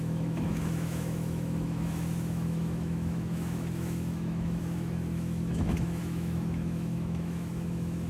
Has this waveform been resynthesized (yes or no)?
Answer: yes